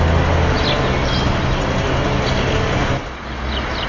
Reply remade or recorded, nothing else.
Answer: recorded